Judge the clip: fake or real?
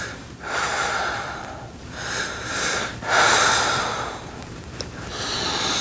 fake